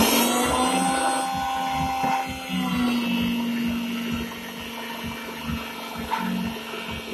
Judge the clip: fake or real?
real